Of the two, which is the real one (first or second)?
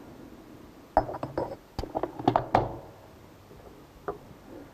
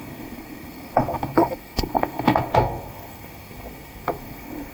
first